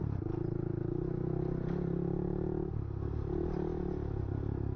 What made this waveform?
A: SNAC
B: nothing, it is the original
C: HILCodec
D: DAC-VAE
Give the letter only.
B